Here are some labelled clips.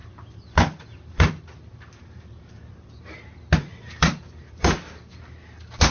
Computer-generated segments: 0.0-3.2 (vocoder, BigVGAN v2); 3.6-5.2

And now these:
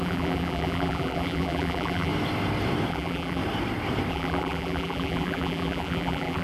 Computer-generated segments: 0.0-2.1 (vocoder, BigVGAN v2); 2.9-3.4; 4.1-6.4

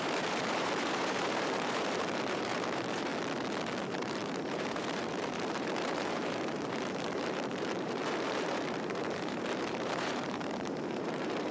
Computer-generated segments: 0.0-3.1 (vocoder, BigVGAN v2); 3.8-11.5

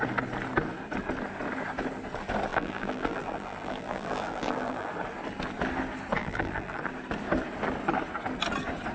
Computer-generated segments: 2.5-4.9 (vocoder, BigVGAN v2); 6.2-6.8

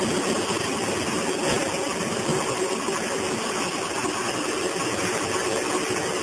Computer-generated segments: none

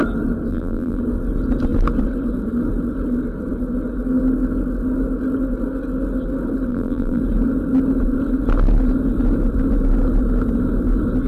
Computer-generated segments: 0.5-1.0 (vocoder, BigVGAN v2); 6.7-7.2

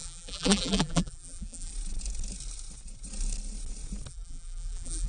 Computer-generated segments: 0.0-1.7 (vocoder, BigVGAN v2); 4.1-5.1

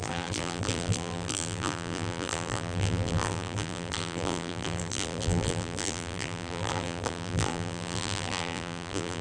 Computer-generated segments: 0.0-9.2 (vocoder, BigVGAN v2)